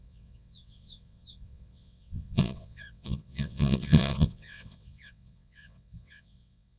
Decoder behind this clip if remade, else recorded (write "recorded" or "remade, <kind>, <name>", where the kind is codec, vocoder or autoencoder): remade, vocoder, WaveNeXt